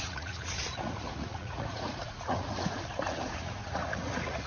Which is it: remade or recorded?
remade